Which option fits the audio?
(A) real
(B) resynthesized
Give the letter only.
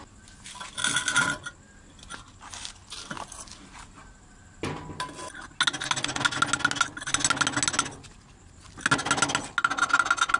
A